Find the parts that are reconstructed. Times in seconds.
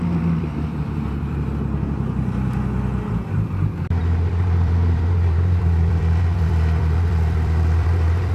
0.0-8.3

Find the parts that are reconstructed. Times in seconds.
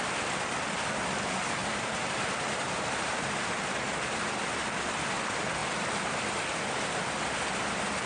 1.6-4.4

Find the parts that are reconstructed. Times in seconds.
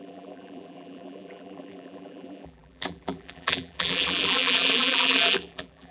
0.0-5.9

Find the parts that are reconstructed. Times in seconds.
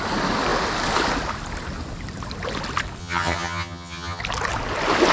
3.0-4.2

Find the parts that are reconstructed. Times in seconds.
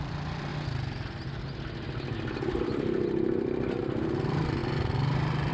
0.0-0.5; 3.8-4.6